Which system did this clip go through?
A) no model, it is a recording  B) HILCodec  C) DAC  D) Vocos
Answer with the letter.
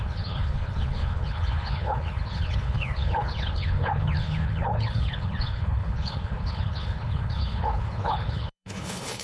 B